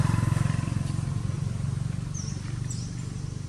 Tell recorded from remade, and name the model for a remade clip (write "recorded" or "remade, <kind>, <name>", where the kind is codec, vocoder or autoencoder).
recorded